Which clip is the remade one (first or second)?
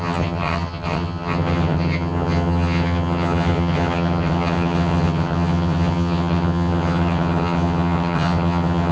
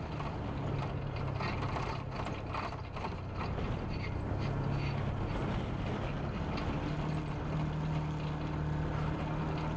first